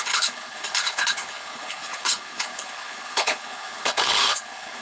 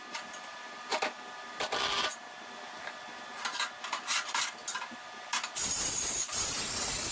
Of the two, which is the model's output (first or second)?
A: first